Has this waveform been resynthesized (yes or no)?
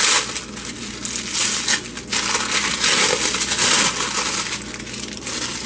no